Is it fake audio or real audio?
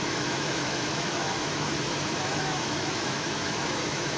fake